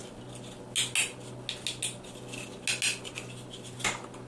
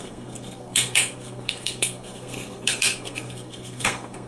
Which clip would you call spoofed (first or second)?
second